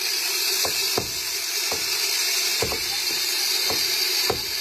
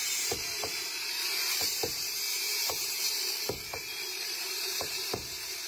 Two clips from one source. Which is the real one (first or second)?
first